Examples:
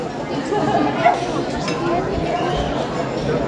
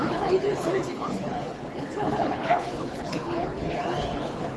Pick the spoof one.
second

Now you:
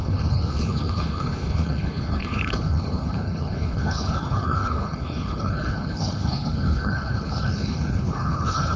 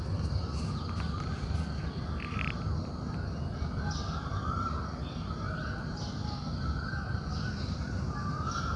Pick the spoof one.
first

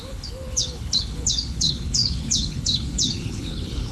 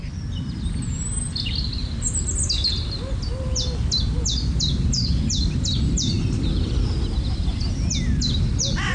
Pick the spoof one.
first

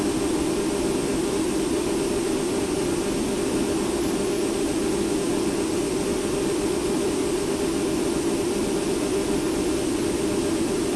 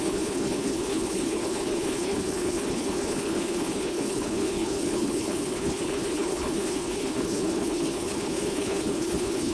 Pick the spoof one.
second